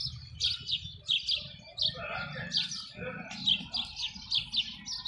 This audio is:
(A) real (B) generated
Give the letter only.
A